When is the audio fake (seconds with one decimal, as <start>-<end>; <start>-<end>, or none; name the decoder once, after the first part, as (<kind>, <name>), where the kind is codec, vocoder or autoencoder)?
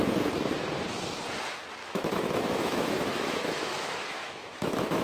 1.8-5.0 (autoencoder, DAC-VAE)